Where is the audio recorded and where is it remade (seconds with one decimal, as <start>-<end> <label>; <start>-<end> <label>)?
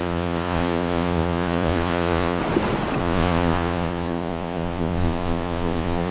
0.0-2.4 remade; 2.4-3.0 recorded; 3.0-6.1 remade